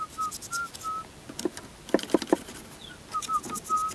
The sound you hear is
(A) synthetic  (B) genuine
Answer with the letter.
B